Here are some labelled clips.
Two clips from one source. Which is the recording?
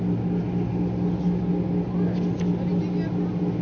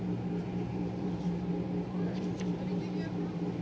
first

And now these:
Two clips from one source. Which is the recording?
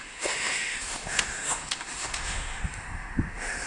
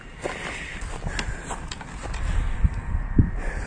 second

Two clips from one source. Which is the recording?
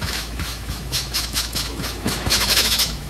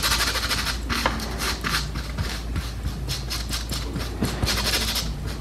second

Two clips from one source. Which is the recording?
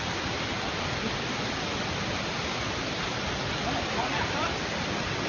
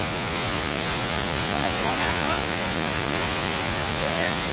first